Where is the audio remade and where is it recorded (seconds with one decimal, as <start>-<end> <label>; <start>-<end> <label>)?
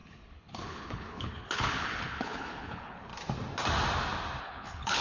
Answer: 0.0-3.1 remade; 3.1-4.4 recorded; 4.4-5.0 remade